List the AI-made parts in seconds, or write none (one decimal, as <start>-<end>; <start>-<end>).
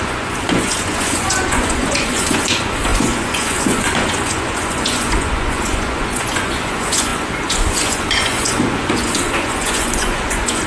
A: 0.0-10.7